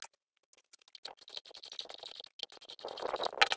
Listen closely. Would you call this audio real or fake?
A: real